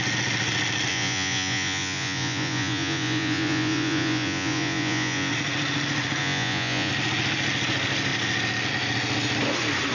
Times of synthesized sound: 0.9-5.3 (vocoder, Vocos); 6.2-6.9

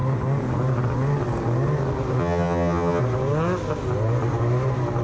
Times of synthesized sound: 2.2-3.0 (vocoder, HiFi-GAN)

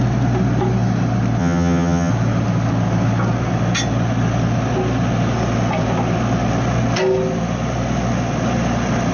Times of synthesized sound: 1.4-2.1 (vocoder, HiFi-GAN)

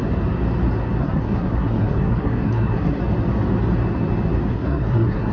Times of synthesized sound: 1.0-3.0 (codec, SNAC); 4.5-5.3

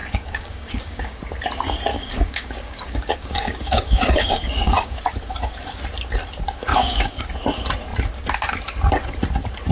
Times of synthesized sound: 0.0-1.2 (codec, DAC); 1.9-5.0; 6.7-7.2

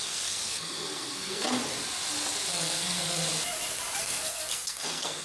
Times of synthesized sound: 0.0-1.6 (codec, SNAC); 2.5-3.2; 4.0-5.2